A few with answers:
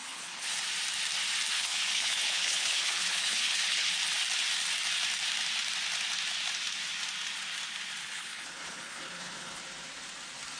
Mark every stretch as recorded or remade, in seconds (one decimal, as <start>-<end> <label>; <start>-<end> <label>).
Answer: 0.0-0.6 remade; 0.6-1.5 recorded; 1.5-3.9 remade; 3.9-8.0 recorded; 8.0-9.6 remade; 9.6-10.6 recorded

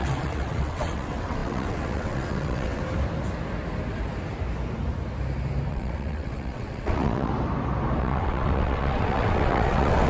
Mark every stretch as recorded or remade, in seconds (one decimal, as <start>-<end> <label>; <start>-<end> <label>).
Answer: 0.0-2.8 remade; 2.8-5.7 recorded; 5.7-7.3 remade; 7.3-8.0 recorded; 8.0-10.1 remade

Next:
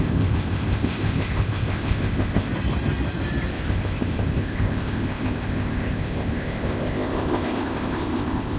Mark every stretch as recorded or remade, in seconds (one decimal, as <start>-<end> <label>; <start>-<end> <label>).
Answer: 0.0-2.5 remade; 2.5-3.5 recorded; 3.5-8.6 remade

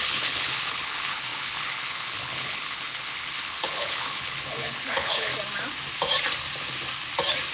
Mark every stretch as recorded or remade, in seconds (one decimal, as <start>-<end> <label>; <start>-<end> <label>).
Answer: 0.0-5.3 remade; 5.3-7.5 recorded

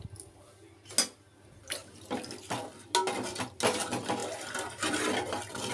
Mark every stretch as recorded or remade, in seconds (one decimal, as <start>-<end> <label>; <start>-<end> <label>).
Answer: 0.0-5.7 recorded

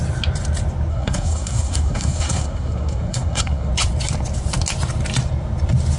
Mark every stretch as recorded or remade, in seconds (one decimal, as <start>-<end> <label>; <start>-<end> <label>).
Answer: 0.0-0.9 recorded; 0.9-3.7 remade; 3.7-6.0 recorded

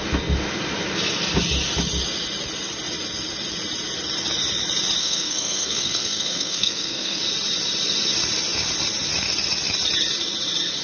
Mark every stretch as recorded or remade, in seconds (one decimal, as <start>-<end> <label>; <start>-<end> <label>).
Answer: 0.0-5.0 recorded; 5.0-7.2 remade; 7.2-10.8 recorded